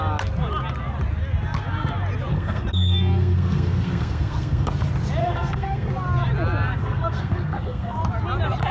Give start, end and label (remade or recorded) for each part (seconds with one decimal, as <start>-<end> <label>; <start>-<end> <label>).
0.0-2.3 recorded; 2.3-4.7 remade; 4.7-5.2 recorded; 5.2-5.9 remade; 5.9-6.8 recorded; 6.8-8.0 remade; 8.0-8.7 recorded

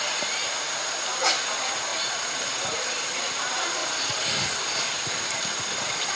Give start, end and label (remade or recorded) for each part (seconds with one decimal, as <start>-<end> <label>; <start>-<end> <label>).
0.0-6.1 recorded